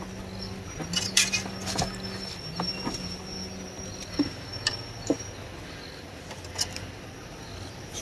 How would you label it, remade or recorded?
recorded